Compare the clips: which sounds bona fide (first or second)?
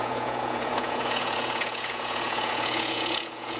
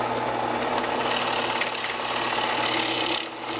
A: second